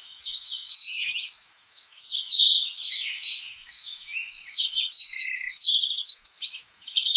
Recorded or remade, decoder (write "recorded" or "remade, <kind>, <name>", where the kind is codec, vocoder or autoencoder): remade, autoencoder, DAC-VAE